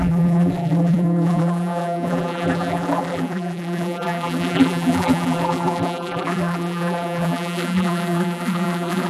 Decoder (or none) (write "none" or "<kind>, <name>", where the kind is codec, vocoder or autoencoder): vocoder, BigVGAN v2